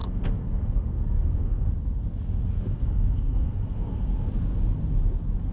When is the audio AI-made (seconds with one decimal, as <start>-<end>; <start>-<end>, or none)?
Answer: 0.0-1.7; 2.7-4.1